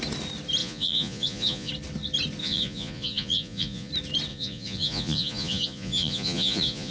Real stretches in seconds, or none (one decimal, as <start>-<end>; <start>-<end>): 0.0-0.6; 1.7-2.4; 3.9-4.3